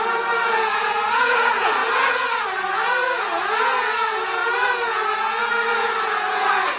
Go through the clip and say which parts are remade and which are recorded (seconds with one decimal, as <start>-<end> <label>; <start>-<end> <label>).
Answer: 0.0-6.8 remade